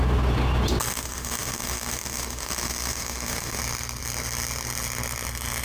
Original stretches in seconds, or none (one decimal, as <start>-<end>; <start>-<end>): 0.0-0.9; 3.6-5.6